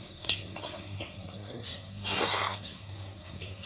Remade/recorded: remade